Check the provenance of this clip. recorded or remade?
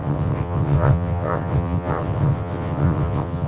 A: remade